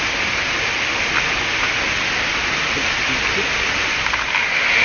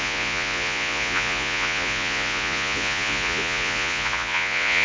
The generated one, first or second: second